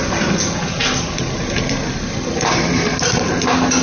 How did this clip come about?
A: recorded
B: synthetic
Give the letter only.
A